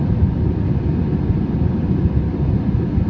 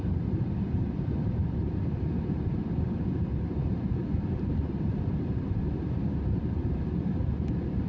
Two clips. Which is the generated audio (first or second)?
second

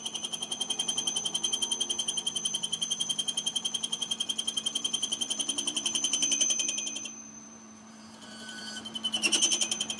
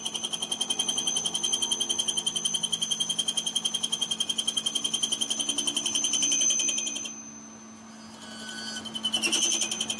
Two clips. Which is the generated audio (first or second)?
first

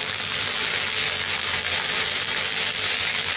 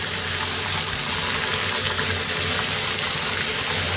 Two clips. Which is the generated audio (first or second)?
first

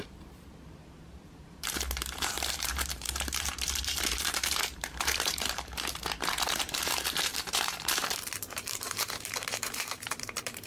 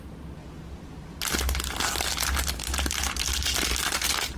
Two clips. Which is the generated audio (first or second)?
first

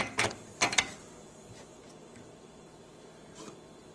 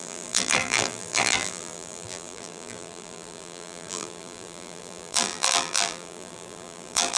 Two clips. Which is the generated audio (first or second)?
second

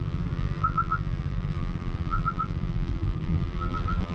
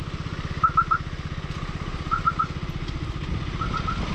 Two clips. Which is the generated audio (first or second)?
first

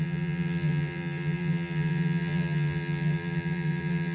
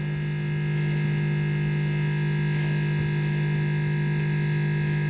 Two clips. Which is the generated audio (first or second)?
first